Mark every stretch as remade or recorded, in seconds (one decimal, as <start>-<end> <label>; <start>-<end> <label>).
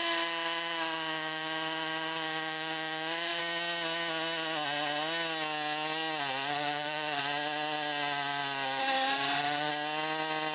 0.0-3.4 remade; 3.4-6.5 recorded; 6.5-7.2 remade; 7.2-8.8 recorded; 8.8-9.7 remade; 9.7-10.5 recorded